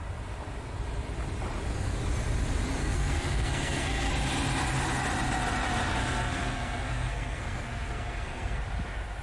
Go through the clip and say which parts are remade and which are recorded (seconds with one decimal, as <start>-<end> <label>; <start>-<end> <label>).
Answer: 0.0-2.8 recorded; 2.8-4.1 remade; 4.1-6.0 recorded; 6.0-8.6 remade; 8.6-9.2 recorded